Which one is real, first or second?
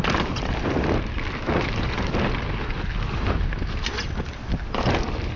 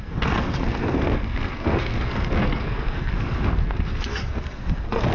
first